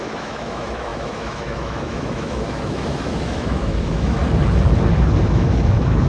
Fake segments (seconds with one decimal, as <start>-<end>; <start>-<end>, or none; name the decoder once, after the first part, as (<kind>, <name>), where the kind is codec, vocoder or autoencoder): 0.0-4.2 (autoencoder, DAC-VAE); 5.2-6.1